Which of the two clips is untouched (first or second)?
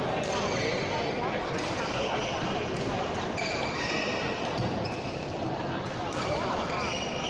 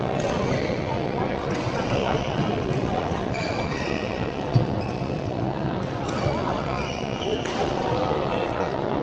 first